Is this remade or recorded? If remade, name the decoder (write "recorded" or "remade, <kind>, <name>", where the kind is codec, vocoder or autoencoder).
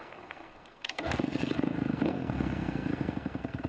remade, codec, SNAC